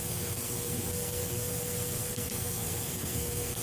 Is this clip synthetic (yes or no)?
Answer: yes